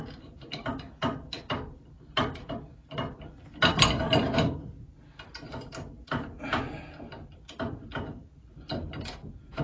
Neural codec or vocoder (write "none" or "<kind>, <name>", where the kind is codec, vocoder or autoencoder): none